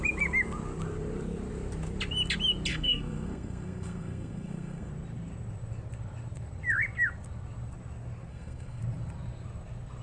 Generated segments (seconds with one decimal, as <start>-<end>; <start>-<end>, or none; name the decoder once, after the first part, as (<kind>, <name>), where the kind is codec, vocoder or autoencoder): 2.7-4.9 (codec, SNAC); 8.3-8.8